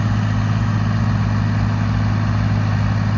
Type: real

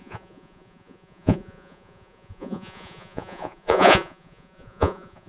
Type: fake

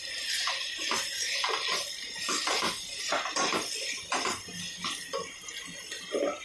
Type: real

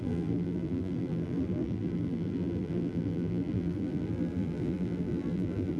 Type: fake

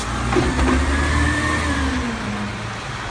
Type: real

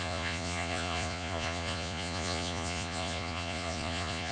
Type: fake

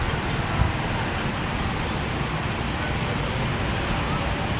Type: real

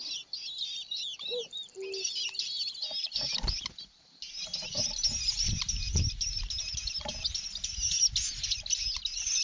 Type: real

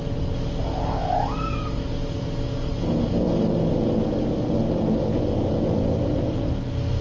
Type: real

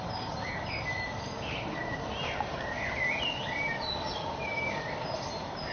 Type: fake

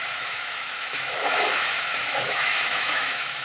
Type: fake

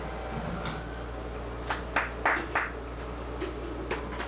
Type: real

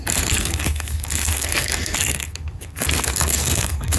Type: fake